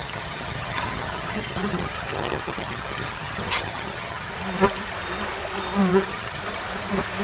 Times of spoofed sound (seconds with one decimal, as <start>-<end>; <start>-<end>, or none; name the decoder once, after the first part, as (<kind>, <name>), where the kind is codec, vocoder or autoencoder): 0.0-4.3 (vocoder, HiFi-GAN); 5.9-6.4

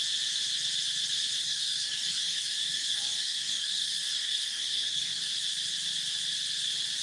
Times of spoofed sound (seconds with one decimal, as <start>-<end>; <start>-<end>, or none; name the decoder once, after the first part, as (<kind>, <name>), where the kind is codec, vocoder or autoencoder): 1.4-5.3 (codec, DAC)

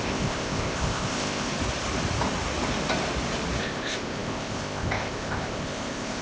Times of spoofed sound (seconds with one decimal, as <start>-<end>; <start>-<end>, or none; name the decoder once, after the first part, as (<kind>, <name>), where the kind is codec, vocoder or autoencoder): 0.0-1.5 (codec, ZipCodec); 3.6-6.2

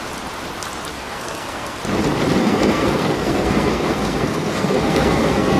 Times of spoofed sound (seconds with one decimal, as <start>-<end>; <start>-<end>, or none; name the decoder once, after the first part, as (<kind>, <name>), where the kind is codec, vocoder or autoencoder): 0.9-1.8 (codec, SNAC); 2.4-5.6